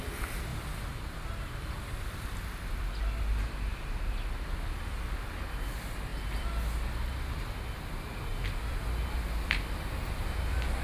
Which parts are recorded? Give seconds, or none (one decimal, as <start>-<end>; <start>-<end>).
0.0-10.8